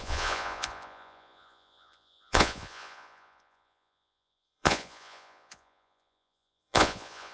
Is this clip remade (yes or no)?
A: yes